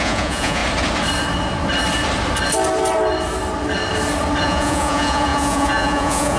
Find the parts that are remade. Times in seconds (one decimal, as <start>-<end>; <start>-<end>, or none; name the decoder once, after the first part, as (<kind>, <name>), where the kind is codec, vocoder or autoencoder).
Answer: 0.0-0.6 (vocoder, Vocos); 4.4-6.4